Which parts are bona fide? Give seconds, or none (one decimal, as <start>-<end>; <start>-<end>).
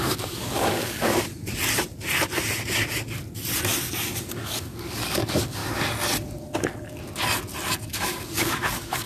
1.3-4.2; 5.6-7.9